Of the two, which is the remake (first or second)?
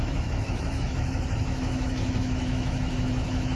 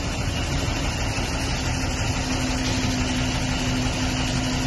first